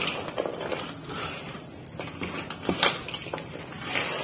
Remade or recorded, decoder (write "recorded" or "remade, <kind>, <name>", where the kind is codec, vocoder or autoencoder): recorded